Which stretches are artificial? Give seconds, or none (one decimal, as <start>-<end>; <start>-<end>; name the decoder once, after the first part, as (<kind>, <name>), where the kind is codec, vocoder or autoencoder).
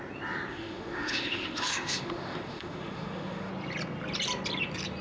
0.5-3.5 (autoencoder, DAC-VAE)